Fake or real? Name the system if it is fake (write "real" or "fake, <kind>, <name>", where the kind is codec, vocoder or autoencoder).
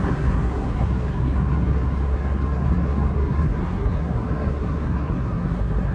fake, codec, SNAC